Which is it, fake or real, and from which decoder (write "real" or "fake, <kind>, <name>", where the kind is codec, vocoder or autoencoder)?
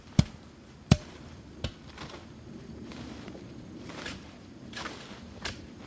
fake, vocoder, BigVGAN v2